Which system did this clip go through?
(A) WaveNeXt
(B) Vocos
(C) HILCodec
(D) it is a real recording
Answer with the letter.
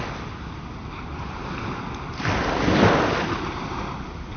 D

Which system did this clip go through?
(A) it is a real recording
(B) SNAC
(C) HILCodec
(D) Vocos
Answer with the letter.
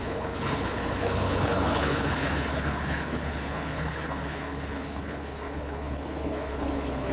C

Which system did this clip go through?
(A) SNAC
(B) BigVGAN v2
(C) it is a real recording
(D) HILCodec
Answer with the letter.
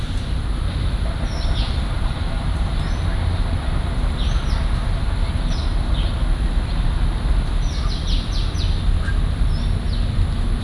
C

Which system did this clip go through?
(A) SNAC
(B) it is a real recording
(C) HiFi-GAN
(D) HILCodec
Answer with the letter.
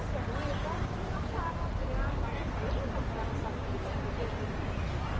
B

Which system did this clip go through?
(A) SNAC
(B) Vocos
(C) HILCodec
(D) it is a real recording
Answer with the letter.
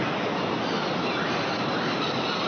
D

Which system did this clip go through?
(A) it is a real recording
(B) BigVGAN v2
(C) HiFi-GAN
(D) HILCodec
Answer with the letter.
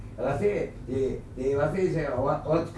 A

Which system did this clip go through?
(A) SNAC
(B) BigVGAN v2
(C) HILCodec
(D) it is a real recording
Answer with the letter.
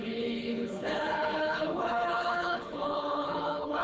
C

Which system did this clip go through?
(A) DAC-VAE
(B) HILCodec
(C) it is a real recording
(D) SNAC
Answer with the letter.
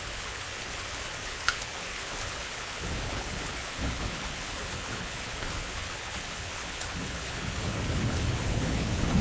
B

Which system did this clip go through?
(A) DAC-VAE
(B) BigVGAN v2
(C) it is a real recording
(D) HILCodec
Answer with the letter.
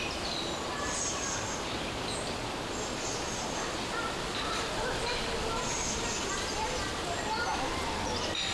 C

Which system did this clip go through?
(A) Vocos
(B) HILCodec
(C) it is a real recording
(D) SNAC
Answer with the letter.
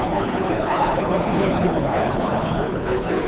B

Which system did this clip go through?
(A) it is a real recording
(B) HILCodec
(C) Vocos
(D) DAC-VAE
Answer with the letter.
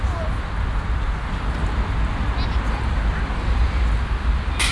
A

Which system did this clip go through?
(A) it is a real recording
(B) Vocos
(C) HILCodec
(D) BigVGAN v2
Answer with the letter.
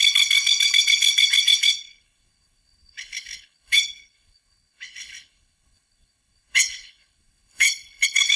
C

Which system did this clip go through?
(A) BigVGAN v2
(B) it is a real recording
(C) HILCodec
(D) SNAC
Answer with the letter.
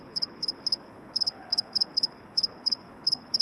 C